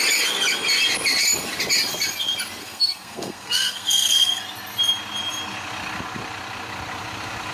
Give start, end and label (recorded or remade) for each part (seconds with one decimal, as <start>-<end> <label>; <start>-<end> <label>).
0.0-2.6 recorded; 2.6-4.4 remade; 4.4-7.5 recorded